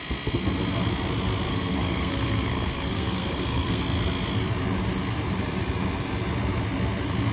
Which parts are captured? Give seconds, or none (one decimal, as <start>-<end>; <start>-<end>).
0.0-1.5; 3.8-7.3